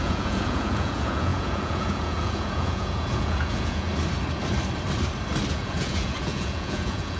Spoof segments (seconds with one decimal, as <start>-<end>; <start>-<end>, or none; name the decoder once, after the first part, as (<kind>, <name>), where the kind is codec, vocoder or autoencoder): 0.0-3.9 (vocoder, Vocos); 5.5-7.2